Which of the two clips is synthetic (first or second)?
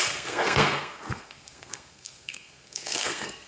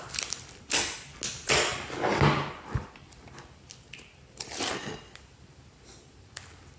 first